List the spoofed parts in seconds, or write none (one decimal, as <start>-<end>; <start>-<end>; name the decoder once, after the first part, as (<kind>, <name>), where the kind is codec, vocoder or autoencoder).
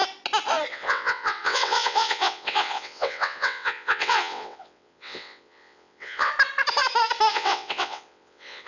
0.7-6.3 (vocoder, WaveNeXt); 7.3-8.7